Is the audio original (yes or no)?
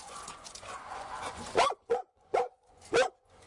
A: no